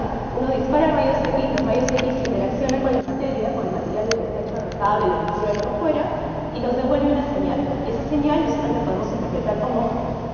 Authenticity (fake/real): real